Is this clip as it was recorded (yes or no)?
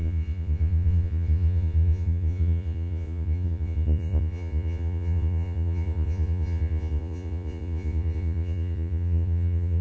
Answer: no